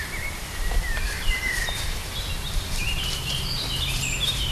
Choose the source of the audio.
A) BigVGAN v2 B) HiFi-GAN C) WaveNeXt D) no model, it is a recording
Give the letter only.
A